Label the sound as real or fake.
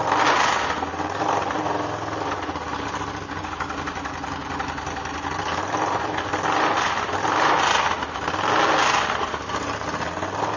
real